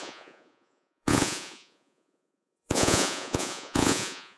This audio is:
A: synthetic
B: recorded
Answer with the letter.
A